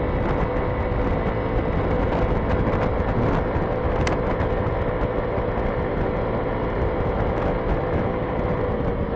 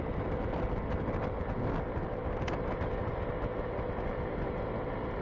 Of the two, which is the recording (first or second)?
first